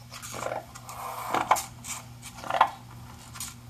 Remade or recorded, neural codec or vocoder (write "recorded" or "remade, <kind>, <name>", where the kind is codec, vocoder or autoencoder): recorded